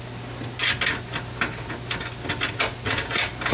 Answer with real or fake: real